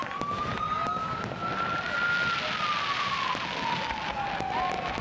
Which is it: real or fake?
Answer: real